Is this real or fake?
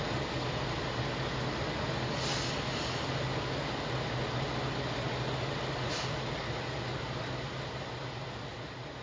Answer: real